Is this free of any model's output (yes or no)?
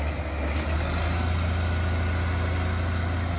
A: yes